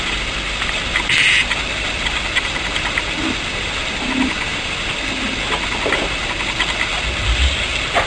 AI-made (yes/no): no